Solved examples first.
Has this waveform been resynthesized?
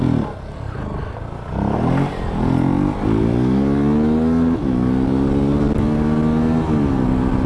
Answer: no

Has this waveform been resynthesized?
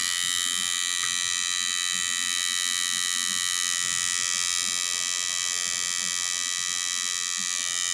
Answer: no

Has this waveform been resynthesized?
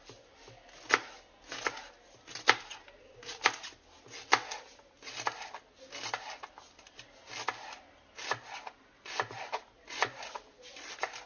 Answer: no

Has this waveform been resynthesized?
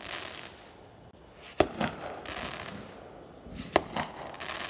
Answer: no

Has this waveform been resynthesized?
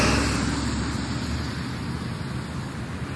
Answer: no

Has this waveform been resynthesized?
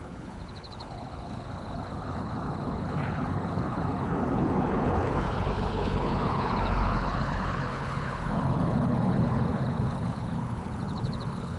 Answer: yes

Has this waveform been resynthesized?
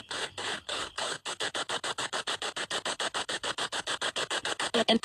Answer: yes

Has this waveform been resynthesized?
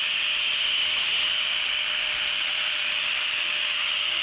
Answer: no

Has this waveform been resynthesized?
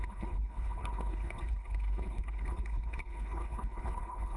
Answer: yes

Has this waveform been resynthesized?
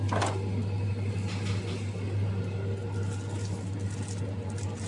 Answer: no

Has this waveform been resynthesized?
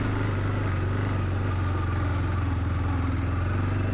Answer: no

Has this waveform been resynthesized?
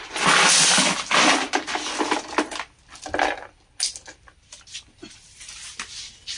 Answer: no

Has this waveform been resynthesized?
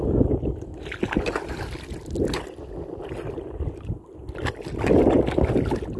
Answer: no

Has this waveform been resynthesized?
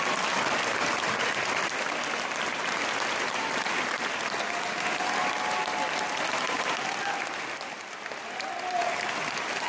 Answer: no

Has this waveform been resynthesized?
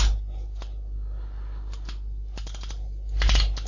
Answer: no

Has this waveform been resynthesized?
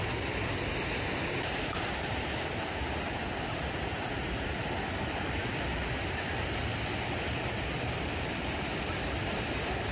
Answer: no